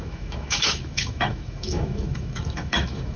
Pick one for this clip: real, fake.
fake